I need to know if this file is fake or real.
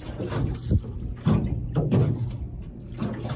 real